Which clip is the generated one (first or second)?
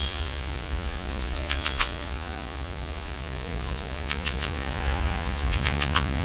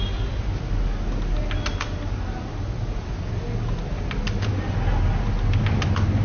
first